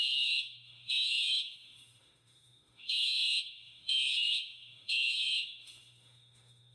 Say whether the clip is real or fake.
fake